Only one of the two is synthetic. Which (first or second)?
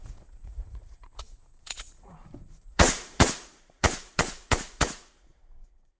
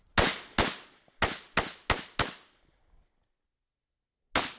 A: first